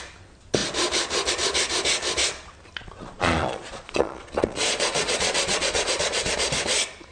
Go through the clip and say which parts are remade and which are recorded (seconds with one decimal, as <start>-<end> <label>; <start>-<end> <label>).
0.0-2.8 recorded; 2.8-6.3 remade; 6.3-7.1 recorded

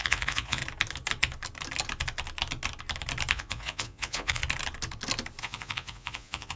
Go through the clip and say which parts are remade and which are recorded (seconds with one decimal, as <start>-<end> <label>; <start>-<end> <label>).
0.0-0.6 remade; 0.6-3.3 recorded; 3.3-4.4 remade; 4.4-5.4 recorded; 5.4-6.6 remade

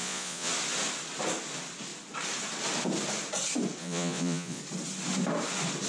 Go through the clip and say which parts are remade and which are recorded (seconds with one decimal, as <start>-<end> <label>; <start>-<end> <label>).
0.0-0.5 remade; 0.5-3.8 recorded; 3.8-4.6 remade; 4.6-5.9 recorded

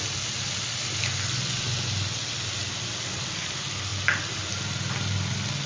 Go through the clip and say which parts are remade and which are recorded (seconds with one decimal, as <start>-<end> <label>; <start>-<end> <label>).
0.0-5.7 recorded

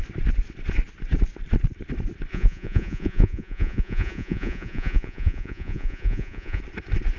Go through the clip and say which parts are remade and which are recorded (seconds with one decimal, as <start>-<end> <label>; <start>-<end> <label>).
0.0-2.3 recorded; 2.3-6.6 remade; 6.6-7.2 recorded

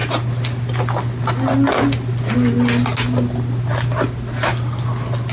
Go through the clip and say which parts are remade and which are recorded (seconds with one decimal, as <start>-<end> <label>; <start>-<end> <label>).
0.0-5.3 recorded

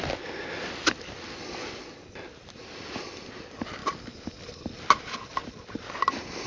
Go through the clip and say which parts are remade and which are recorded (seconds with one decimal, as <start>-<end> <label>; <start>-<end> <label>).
0.0-6.5 recorded

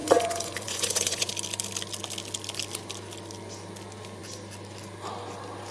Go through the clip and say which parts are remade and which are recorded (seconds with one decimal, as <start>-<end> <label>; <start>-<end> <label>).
0.0-1.3 remade; 1.3-5.7 recorded